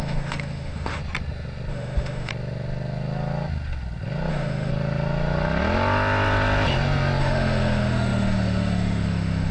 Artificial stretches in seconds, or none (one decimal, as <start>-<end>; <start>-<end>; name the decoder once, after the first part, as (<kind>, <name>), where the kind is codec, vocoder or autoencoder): 0.0-1.0 (autoencoder, DAC-VAE); 1.7-2.3; 4.3-4.7; 7.2-9.5